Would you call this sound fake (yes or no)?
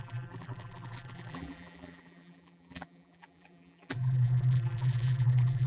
yes